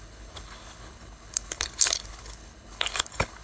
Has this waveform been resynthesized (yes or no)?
yes